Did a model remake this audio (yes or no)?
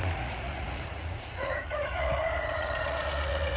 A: yes